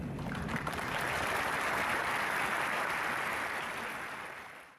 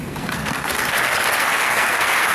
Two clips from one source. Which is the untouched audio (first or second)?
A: first